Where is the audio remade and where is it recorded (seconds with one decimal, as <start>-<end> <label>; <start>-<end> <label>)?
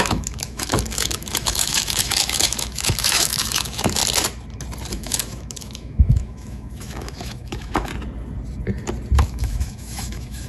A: 0.0-4.0 remade; 4.0-4.9 recorded; 4.9-7.9 remade; 7.9-9.2 recorded; 9.2-10.5 remade